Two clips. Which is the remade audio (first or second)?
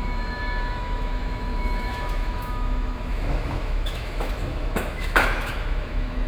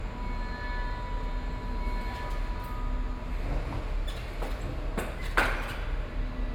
first